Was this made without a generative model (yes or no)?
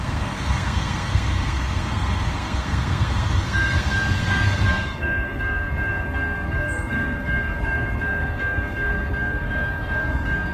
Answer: no